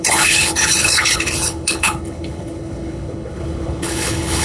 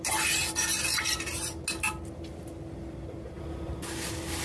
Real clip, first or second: second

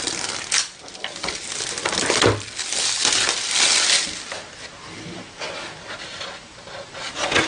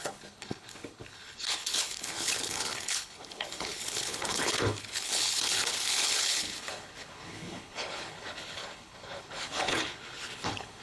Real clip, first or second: first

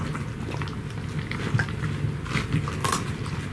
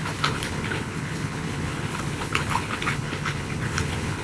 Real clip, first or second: first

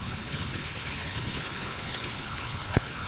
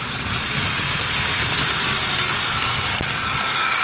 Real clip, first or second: second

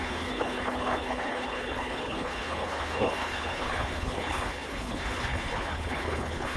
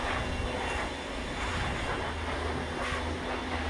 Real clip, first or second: second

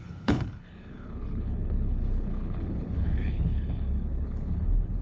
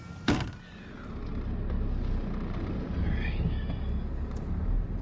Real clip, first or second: second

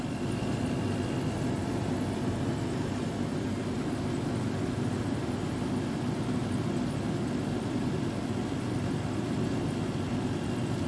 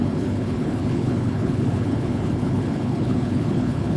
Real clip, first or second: first